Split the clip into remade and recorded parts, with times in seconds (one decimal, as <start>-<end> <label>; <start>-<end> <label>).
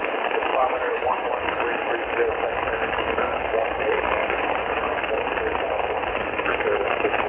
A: 0.0-0.5 recorded; 0.5-1.3 remade; 1.3-4.2 recorded; 4.2-4.7 remade; 4.7-7.3 recorded